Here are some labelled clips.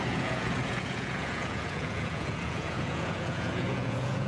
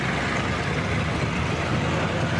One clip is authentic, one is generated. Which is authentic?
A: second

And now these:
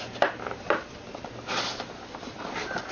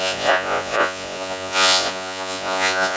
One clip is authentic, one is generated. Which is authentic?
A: first